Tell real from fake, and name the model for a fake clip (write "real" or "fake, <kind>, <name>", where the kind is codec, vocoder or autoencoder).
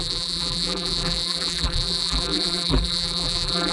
fake, vocoder, BigVGAN v2